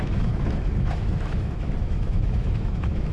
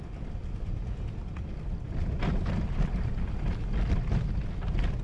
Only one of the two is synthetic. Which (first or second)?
first